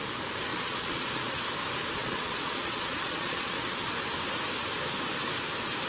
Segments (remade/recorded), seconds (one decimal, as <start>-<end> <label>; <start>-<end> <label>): 0.0-0.5 recorded; 0.5-1.4 remade; 1.4-2.0 recorded; 2.0-3.9 remade; 3.9-5.9 recorded